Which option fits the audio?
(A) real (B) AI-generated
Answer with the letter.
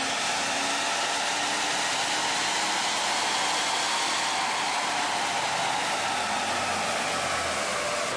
A